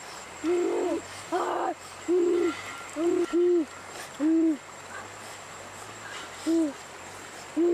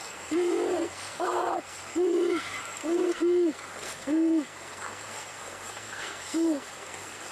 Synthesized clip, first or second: second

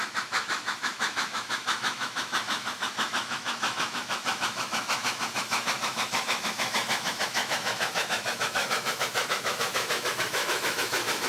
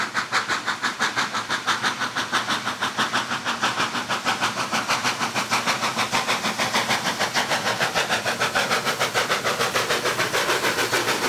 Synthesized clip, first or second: first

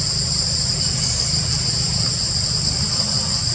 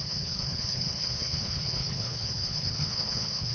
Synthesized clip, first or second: second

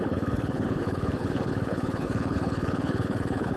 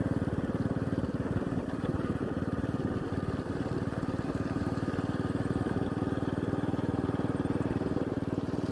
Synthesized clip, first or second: first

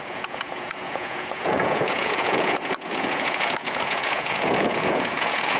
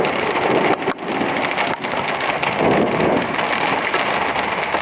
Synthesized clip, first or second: first